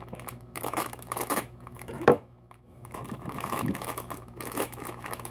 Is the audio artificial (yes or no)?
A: yes